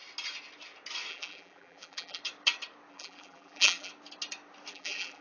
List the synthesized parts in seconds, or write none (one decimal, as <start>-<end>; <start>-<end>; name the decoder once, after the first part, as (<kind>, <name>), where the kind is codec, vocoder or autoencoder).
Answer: 1.1-2.2 (vocoder, BigVGAN v2); 2.9-3.9; 4.7-5.2